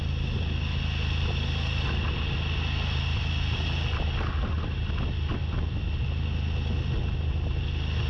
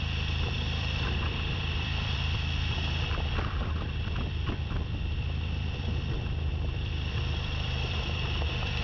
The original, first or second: first